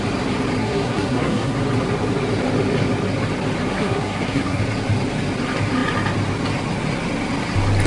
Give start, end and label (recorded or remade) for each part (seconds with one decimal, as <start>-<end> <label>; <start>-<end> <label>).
0.0-0.6 recorded; 0.6-1.6 remade; 1.6-3.7 recorded; 3.7-4.6 remade; 4.6-7.9 recorded